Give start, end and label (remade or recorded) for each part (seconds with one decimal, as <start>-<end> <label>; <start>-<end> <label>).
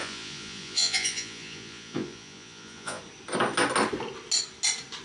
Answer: 0.0-3.0 remade; 3.0-5.0 recorded